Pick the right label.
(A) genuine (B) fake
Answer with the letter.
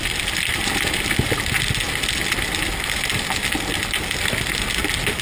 A